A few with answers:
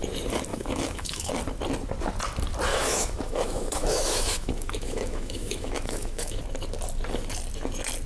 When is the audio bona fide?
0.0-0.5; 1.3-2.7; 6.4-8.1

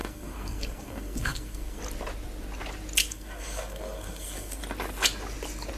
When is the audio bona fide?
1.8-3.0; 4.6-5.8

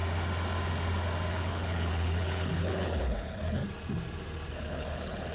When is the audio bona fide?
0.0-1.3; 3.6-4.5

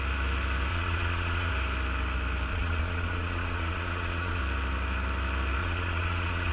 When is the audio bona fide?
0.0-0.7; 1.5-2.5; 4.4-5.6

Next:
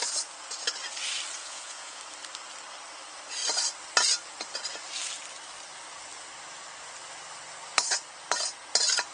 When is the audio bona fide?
0.0-1.4; 2.0-9.1